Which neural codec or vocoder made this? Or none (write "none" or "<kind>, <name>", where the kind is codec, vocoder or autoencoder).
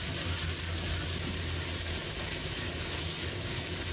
none